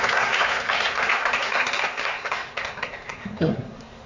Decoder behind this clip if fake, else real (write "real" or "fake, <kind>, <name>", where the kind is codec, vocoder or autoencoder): fake, codec, SNAC